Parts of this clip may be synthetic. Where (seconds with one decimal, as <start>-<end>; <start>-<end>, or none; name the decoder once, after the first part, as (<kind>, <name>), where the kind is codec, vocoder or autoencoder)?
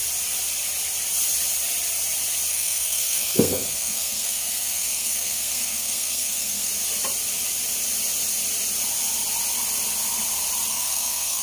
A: 2.5-6.7 (codec, SNAC); 10.7-11.4